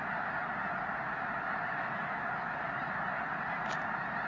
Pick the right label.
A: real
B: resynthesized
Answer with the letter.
A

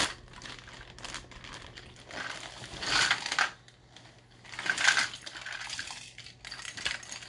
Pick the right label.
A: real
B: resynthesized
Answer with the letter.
A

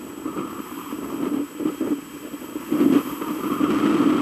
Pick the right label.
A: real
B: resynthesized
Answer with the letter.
A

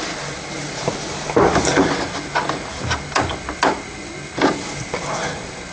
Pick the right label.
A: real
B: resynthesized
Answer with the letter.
A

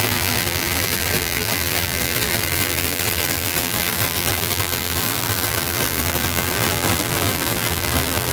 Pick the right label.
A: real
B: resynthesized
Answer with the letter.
B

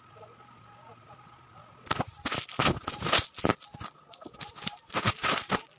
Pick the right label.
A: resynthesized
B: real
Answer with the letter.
B